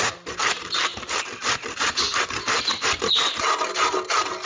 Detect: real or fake real